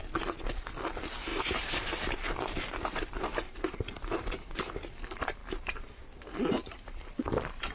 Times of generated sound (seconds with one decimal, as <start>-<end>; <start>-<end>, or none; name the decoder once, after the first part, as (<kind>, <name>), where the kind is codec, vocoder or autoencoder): 1.3-4.0 (vocoder, BigVGAN v2); 5.4-6.0

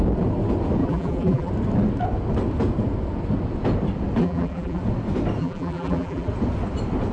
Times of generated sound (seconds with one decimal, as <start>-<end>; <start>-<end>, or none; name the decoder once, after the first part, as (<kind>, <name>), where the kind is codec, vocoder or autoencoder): 0.8-1.5 (vocoder, BigVGAN v2); 4.2-4.8; 5.4-6.3